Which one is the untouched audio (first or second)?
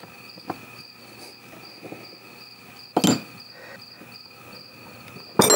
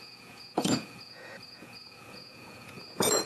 first